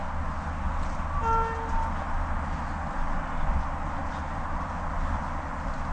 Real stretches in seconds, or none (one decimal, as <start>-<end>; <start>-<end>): 0.0-4.0; 4.9-5.9